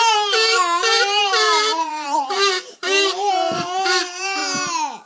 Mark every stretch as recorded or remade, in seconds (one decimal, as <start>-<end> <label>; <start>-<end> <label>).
0.0-4.4 remade; 4.4-5.1 recorded